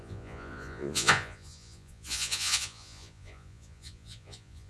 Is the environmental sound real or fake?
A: fake